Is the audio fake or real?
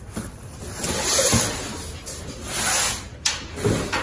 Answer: real